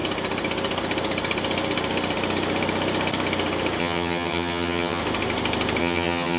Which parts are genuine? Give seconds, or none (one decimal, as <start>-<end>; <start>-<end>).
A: 0.0-3.8; 5.0-5.8